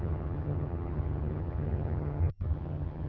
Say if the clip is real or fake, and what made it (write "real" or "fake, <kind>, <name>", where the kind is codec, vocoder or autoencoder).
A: fake, vocoder, HiFi-GAN